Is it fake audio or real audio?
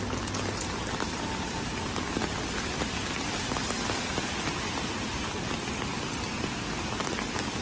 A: real